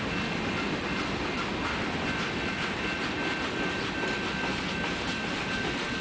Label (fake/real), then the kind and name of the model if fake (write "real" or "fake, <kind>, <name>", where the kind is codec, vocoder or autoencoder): real